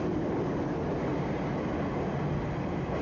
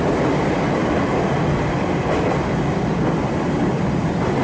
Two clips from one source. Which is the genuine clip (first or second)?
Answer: first